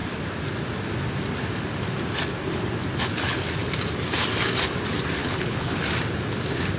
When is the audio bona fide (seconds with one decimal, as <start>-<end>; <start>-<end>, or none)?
0.0-5.2; 5.7-6.8